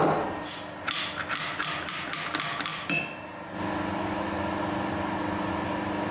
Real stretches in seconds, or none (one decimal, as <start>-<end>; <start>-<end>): 0.0-6.1